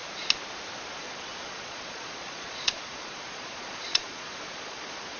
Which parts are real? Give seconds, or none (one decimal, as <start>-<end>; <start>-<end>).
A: 0.0-0.9